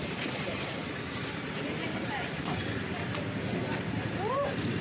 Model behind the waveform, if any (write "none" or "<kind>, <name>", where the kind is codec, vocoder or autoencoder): vocoder, BigVGAN v2